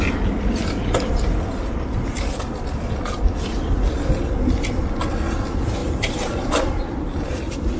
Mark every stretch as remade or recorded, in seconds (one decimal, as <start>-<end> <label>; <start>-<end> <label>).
0.0-5.8 recorded; 5.8-6.5 remade; 6.5-7.8 recorded